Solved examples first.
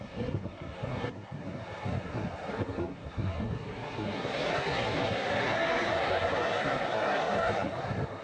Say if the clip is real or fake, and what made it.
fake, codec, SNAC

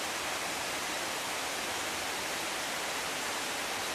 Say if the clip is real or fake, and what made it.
fake, vocoder, BigVGAN v2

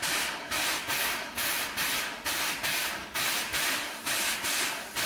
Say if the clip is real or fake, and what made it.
real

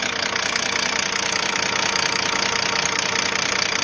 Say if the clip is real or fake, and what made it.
real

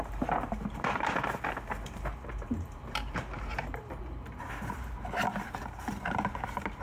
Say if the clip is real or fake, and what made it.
fake, vocoder, BigVGAN v2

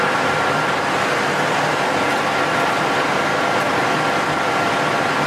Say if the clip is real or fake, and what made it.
real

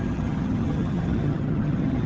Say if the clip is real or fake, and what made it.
fake, vocoder, HiFi-GAN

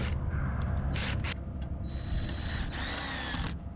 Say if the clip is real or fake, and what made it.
real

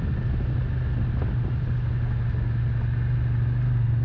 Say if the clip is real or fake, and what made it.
real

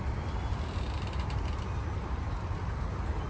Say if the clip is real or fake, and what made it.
real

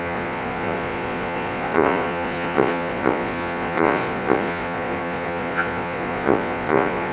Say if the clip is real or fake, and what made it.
fake, vocoder, Vocos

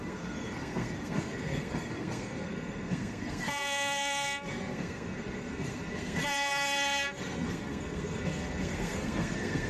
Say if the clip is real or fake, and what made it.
fake, codec, SNAC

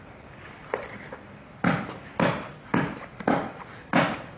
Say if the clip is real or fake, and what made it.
real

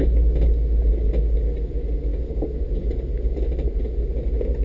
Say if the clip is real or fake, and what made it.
real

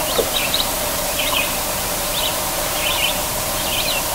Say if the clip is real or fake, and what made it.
fake, vocoder, BigVGAN v2